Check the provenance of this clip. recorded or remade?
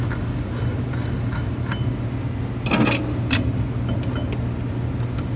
recorded